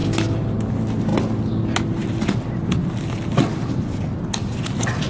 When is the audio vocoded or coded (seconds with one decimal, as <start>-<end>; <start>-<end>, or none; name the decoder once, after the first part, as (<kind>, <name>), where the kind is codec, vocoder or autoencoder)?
none